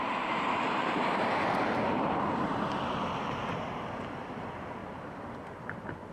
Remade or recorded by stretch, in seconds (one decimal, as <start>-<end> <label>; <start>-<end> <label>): 0.0-3.6 remade; 3.6-4.8 recorded; 4.8-6.1 remade